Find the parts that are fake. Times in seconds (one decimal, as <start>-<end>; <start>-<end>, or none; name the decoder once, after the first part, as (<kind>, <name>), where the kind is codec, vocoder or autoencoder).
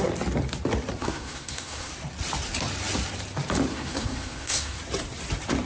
1.0-1.9 (codec, SNAC); 3.7-4.8